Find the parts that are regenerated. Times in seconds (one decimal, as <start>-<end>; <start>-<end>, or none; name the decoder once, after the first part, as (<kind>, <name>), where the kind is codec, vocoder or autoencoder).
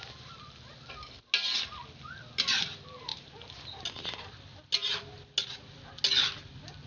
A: none